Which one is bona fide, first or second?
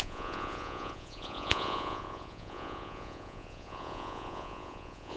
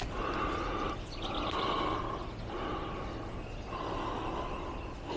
second